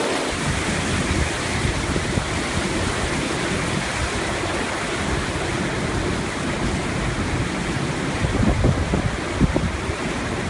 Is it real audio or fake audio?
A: real